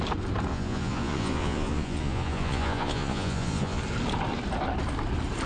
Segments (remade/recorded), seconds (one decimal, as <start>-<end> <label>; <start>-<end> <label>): 0.0-0.5 recorded; 0.5-3.8 remade; 3.8-5.5 recorded

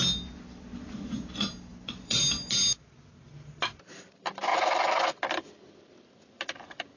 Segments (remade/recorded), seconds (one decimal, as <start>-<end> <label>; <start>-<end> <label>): 0.0-1.7 recorded; 1.7-2.2 remade; 2.2-7.0 recorded

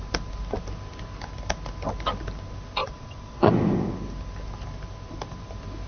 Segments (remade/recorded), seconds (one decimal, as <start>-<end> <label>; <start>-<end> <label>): 0.0-2.8 recorded; 2.8-3.5 remade; 3.5-5.9 recorded

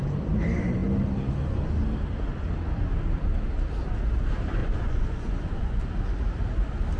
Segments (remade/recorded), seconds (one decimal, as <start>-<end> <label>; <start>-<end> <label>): 0.0-4.6 recorded; 4.6-5.8 remade; 5.8-7.0 recorded

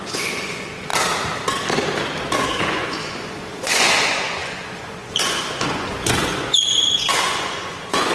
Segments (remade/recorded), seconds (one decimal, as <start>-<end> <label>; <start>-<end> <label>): 0.0-0.9 remade; 0.9-2.3 recorded; 2.3-8.1 remade